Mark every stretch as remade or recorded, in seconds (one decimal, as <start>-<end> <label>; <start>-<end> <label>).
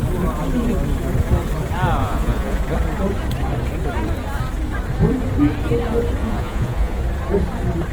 0.0-2.0 recorded; 2.0-2.6 remade; 2.6-6.2 recorded; 6.2-7.0 remade; 7.0-7.9 recorded